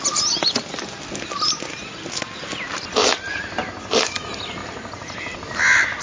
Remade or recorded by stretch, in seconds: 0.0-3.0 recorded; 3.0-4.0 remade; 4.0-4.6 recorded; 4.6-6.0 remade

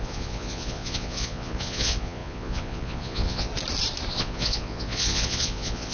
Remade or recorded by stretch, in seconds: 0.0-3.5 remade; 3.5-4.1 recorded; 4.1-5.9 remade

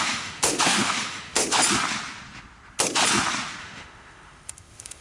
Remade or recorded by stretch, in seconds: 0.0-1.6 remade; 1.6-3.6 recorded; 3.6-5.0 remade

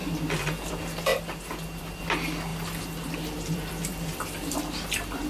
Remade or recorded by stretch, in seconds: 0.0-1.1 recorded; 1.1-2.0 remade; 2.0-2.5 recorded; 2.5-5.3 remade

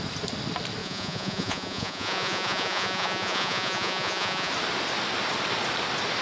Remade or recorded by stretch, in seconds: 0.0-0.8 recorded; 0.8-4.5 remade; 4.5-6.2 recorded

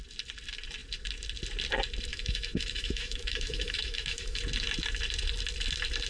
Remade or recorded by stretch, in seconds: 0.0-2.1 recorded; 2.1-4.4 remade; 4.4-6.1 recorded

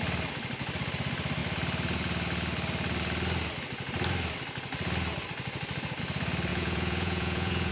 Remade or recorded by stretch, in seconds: 0.0-6.5 recorded; 6.5-7.7 remade